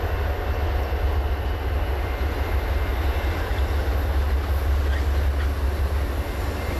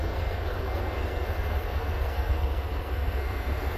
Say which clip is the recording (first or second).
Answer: first